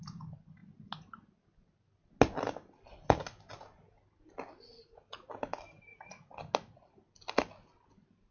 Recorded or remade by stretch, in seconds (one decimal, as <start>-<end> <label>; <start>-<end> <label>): 0.0-8.3 recorded